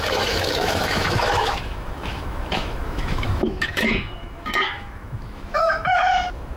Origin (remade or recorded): remade